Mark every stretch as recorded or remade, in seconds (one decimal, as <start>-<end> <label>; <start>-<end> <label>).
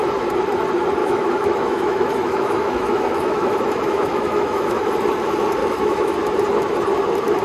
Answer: 0.0-1.0 recorded; 1.0-4.9 remade; 4.9-5.6 recorded; 5.6-6.1 remade; 6.1-7.4 recorded